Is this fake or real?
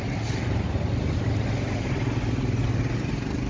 real